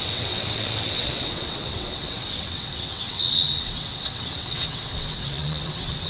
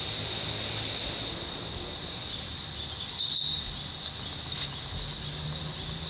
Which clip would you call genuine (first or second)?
second